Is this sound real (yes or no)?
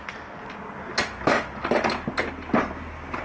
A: yes